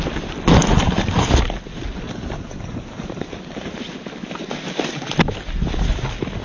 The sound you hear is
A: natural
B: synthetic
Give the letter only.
A